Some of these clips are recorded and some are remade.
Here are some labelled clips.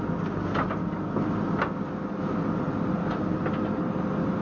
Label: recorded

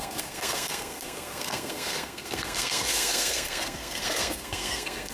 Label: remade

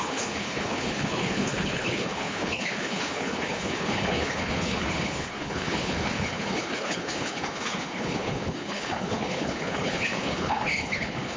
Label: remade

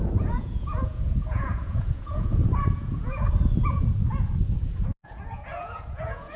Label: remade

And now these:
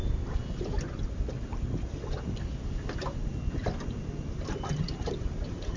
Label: recorded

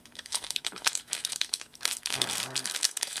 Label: remade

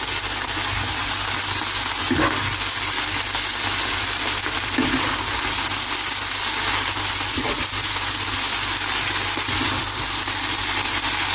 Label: recorded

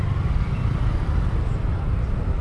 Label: recorded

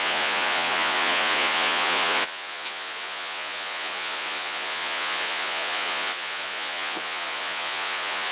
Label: remade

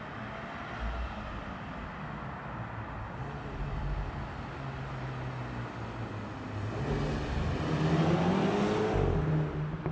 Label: recorded